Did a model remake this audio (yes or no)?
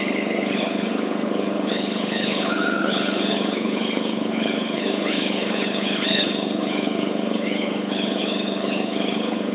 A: yes